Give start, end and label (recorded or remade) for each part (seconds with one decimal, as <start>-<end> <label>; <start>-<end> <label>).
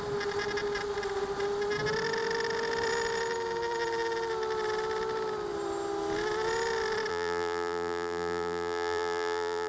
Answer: 0.0-7.1 recorded; 7.1-9.7 remade